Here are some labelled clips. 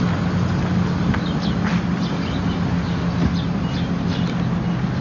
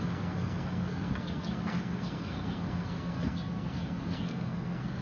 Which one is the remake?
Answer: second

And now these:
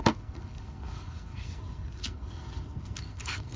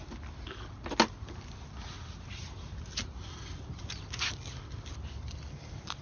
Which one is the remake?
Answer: first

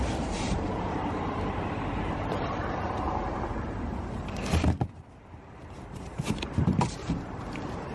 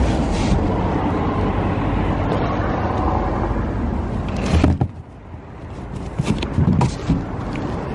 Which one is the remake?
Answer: first